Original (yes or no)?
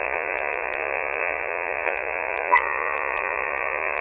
no